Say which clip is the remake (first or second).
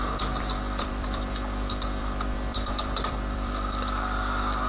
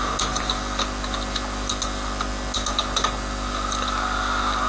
first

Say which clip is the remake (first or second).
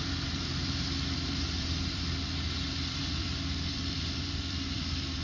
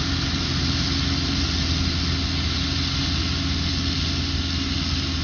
first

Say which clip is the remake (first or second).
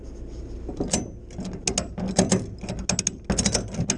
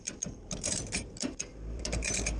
second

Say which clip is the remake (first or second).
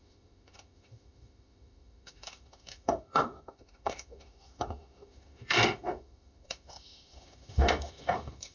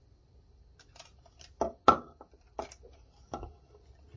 first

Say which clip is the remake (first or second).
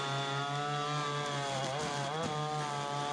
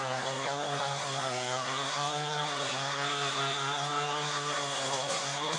second